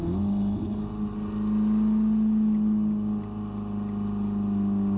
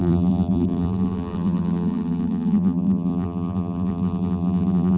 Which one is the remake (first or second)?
second